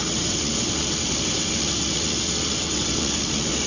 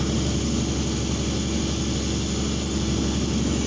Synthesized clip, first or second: first